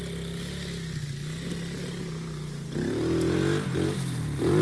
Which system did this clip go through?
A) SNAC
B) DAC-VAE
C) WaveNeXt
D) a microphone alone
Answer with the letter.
D